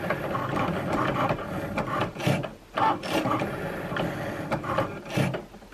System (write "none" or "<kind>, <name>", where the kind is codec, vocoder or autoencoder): none